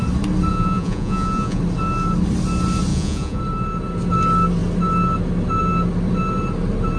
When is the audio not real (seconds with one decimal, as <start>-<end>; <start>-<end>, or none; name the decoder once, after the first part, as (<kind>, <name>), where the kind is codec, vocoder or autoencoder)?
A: 0.5-1.6 (vocoder, Vocos); 2.9-3.4